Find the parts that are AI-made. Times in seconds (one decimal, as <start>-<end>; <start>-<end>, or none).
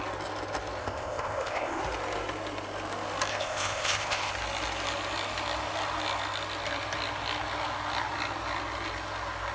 0.8-1.8; 3.3-4.3